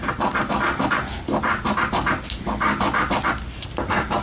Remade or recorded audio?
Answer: recorded